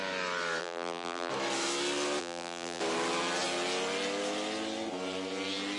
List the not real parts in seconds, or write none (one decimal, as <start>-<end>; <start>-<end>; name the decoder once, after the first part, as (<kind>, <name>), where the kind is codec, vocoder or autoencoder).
0.6-1.3 (vocoder, BigVGAN v2); 2.2-2.8